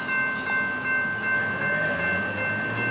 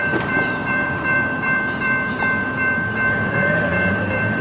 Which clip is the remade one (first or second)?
second